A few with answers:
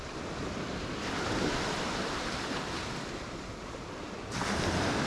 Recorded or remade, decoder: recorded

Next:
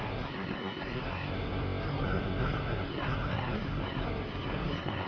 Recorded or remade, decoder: remade, codec, SNAC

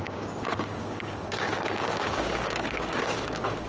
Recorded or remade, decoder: remade, codec, DAC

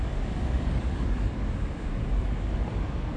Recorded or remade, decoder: remade, codec, DAC